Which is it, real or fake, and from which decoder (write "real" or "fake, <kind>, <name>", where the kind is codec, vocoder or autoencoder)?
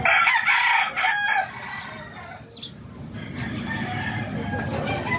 real